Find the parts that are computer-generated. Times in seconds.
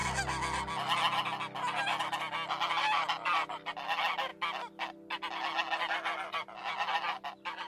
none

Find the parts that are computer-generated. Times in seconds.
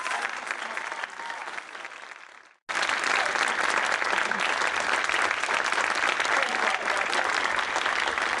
none